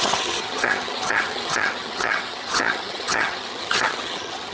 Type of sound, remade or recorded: remade